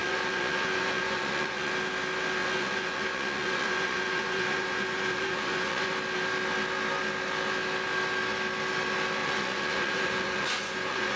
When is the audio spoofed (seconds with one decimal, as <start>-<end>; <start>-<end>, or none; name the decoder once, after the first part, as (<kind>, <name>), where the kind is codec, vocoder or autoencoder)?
0.0-1.7 (vocoder, Vocos); 2.4-5.9; 9.2-11.2